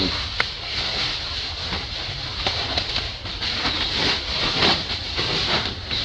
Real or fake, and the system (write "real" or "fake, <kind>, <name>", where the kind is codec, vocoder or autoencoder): fake, vocoder, BigVGAN v2